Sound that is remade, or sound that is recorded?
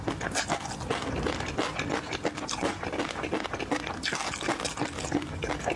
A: recorded